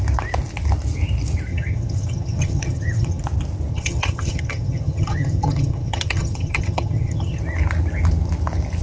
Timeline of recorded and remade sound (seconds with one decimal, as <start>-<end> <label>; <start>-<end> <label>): 0.0-1.5 recorded; 1.5-3.2 remade; 3.2-3.7 recorded; 3.7-7.4 remade; 7.4-8.8 recorded